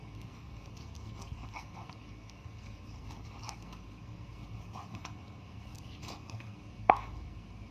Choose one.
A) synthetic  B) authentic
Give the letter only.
A